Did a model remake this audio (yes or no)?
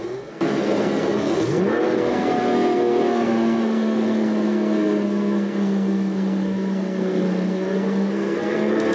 yes